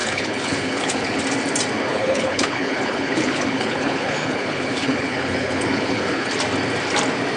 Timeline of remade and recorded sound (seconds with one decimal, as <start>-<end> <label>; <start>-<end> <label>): 0.0-1.2 remade; 1.2-1.9 recorded; 1.9-6.3 remade; 6.3-7.4 recorded